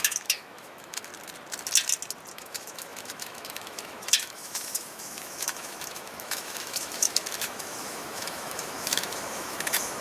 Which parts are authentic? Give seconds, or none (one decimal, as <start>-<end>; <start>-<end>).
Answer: 1.1-2.3